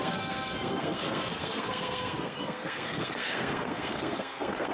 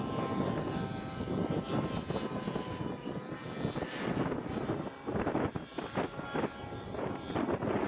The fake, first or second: first